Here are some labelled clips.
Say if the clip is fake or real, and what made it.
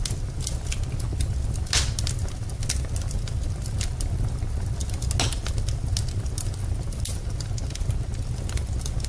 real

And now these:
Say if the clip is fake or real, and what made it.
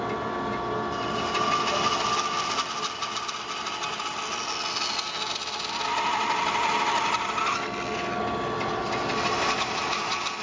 real